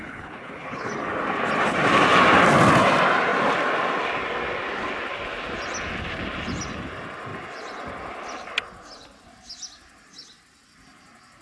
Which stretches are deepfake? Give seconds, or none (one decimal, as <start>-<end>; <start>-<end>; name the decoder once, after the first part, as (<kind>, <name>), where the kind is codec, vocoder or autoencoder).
0.0-0.9 (codec, HILCodec)